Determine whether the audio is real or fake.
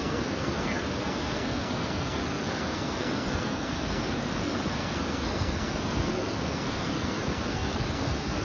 fake